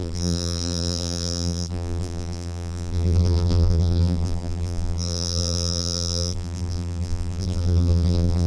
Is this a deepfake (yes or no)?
yes